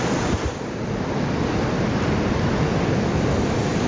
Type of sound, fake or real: real